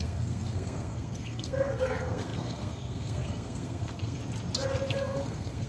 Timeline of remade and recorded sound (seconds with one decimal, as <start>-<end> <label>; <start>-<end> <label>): 0.0-4.2 remade; 4.2-4.9 recorded; 4.9-5.7 remade